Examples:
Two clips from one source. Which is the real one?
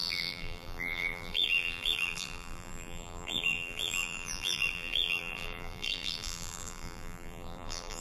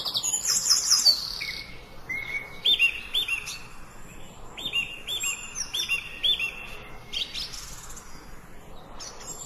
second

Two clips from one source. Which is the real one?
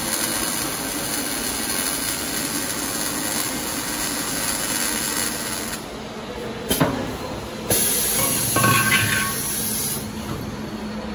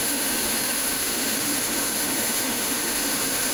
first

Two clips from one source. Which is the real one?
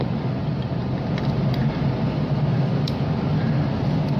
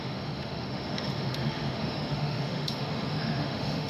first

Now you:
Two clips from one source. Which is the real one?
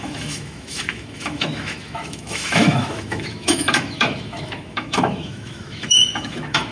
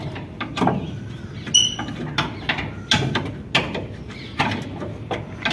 second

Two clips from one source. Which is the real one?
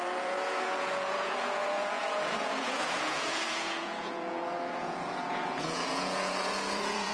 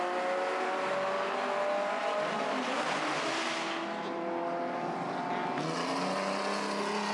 second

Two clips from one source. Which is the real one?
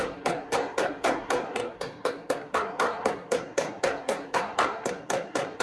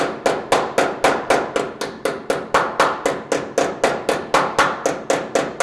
second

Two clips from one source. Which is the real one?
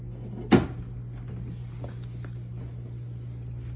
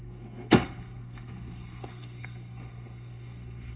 first